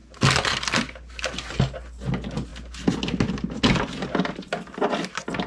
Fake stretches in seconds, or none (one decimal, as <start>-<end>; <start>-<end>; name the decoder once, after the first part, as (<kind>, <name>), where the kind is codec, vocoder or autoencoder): none